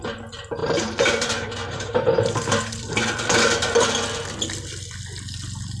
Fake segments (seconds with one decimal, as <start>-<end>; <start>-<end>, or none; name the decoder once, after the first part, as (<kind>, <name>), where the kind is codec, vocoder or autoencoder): 0.6-2.6 (vocoder, BigVGAN v2)